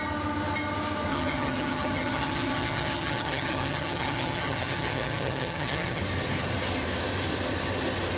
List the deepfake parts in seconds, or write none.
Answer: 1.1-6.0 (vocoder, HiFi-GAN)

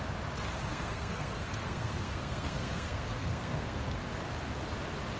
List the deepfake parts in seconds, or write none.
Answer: 0.7-3.8 (codec, SNAC)